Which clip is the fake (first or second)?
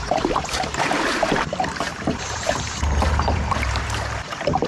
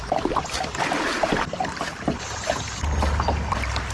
first